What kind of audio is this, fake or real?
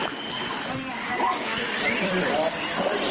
fake